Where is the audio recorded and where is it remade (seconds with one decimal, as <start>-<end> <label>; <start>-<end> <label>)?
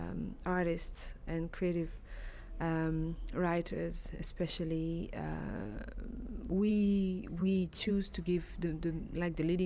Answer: 0.0-7.4 recorded; 7.4-7.9 remade; 7.9-9.7 recorded